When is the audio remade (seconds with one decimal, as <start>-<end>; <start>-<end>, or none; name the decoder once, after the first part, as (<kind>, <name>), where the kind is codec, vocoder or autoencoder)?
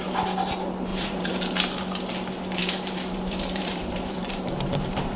0.9-1.6 (vocoder, BigVGAN v2); 2.6-5.2